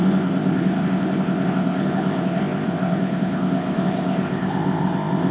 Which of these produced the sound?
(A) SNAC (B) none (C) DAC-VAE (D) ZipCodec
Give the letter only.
D